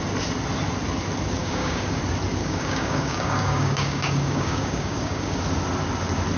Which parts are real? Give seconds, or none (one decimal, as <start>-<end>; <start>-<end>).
0.0-1.4; 2.0-2.4; 5.4-6.4